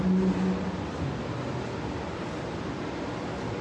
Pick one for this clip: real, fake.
real